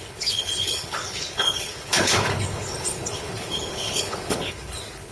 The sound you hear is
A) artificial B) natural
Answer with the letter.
A